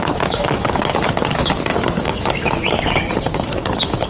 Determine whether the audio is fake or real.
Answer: fake